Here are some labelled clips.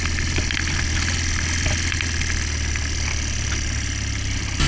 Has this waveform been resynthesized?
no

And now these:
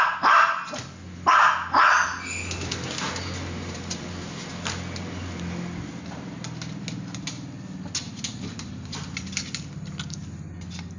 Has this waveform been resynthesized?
no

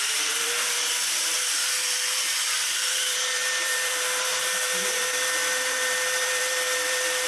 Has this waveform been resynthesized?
yes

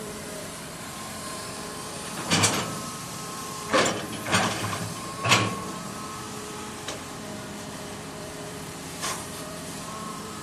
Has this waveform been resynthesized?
yes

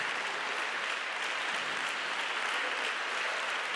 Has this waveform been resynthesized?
no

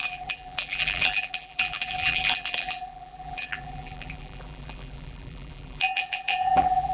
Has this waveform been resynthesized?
yes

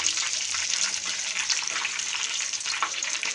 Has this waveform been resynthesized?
yes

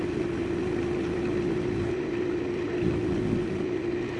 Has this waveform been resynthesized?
yes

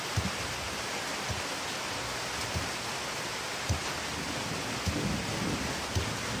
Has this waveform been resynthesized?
no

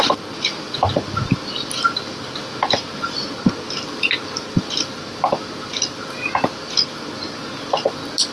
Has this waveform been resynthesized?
no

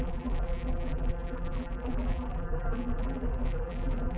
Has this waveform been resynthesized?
yes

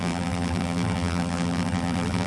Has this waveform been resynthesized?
yes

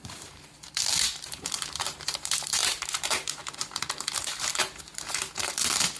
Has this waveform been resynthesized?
yes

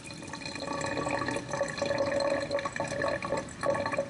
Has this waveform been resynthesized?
no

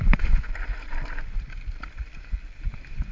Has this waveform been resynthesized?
yes